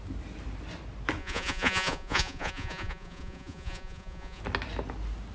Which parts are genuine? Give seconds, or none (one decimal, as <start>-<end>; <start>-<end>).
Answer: 0.0-1.2; 4.4-5.3

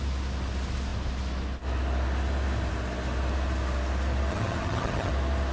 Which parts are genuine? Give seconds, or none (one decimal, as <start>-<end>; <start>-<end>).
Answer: 0.0-4.3; 5.1-5.5

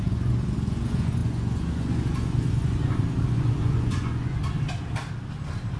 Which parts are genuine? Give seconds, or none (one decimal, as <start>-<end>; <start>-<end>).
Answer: 2.8-3.3; 4.4-5.8

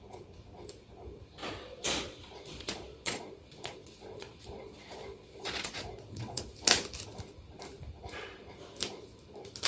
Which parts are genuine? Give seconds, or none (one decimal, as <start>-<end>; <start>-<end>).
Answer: 0.0-1.4; 6.4-9.7

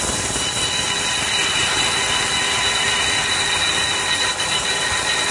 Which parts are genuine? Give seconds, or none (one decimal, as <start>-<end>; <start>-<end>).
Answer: 0.0-5.3

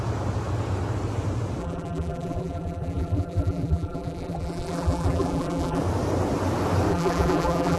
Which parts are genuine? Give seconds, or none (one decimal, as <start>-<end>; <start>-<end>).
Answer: 0.0-1.6; 5.8-6.9

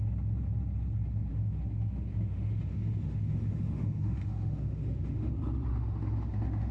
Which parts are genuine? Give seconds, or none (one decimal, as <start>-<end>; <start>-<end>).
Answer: 0.0-1.3; 5.3-5.7

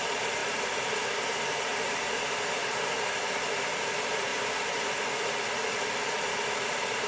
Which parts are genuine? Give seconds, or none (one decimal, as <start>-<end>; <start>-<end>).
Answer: 2.6-3.1; 4.3-5.2